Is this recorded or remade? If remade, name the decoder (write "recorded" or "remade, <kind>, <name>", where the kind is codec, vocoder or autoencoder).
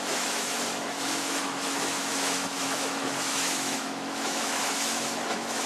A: remade, autoencoder, DAC-VAE